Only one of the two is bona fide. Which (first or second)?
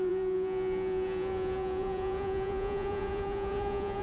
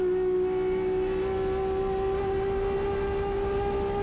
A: second